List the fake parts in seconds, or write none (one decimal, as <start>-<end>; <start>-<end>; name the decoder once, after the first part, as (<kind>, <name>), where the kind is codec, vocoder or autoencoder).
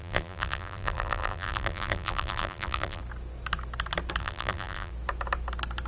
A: 0.0-3.0 (vocoder, BigVGAN v2); 4.2-4.9